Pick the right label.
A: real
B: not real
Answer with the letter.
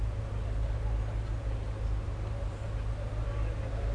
A